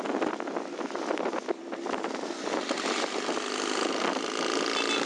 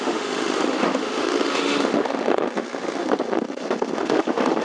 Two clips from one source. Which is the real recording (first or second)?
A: first